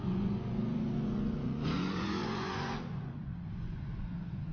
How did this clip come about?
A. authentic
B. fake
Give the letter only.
B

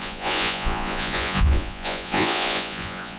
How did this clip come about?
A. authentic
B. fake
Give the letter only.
B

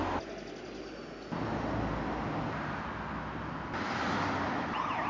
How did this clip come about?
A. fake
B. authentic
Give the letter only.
B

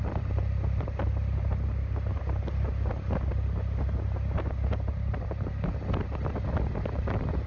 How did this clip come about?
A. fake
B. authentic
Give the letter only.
B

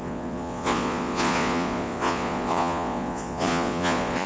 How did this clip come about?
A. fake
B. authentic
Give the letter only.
A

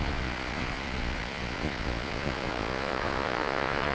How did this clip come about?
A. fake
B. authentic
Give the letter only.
A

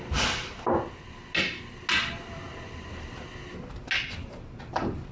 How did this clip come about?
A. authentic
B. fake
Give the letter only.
A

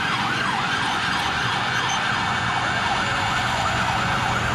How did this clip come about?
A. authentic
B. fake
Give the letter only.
B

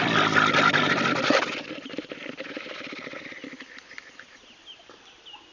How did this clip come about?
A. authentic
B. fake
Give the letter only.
A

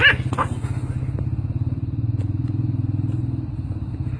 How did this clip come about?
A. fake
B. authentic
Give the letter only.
B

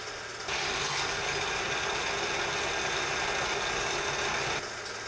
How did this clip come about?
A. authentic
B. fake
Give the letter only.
A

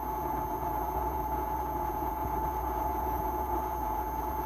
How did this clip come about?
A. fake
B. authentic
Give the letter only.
A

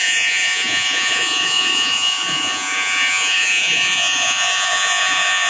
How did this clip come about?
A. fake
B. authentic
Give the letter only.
A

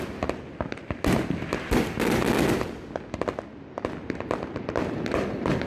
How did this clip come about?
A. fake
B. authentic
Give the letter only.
B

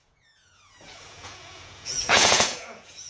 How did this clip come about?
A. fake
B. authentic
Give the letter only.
A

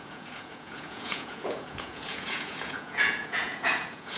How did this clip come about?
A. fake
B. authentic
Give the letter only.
A